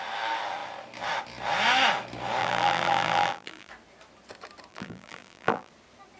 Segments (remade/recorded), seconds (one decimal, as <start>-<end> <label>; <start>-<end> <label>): 0.0-2.4 recorded; 2.4-3.7 remade; 3.7-4.7 recorded; 4.7-5.7 remade; 5.7-6.2 recorded